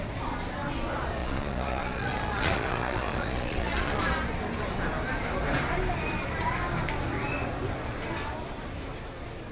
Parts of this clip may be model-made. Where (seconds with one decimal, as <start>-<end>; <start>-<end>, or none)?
1.2-4.0